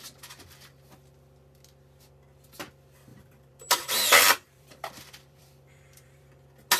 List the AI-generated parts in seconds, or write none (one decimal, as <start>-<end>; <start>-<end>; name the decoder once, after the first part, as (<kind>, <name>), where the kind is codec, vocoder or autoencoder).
3.1-6.3 (vocoder, BigVGAN v2)